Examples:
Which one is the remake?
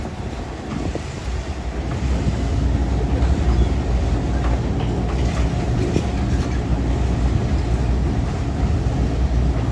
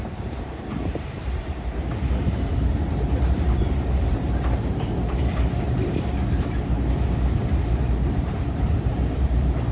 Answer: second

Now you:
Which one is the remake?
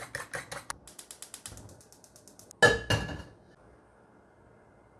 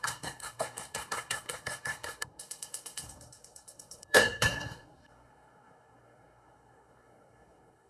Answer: second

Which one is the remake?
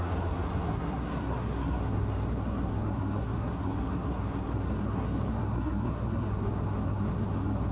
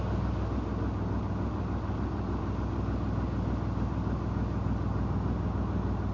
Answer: first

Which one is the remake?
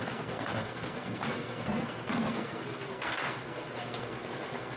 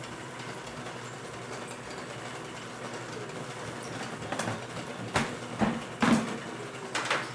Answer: first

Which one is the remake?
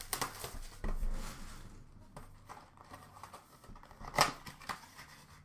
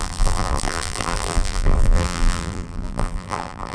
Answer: second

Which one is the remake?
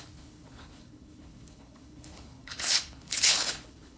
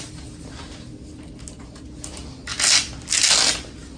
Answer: first